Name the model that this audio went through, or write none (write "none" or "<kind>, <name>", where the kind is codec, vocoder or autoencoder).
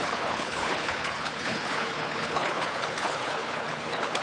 codec, HILCodec